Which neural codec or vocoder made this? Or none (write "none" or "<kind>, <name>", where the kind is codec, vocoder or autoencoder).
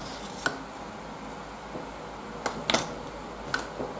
none